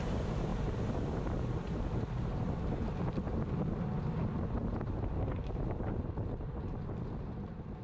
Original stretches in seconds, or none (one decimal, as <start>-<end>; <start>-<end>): 0.0-0.5; 2.9-4.6; 6.0-7.8